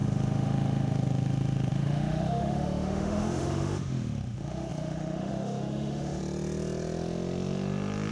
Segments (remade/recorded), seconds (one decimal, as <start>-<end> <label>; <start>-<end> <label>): 0.0-6.2 remade; 6.2-8.1 recorded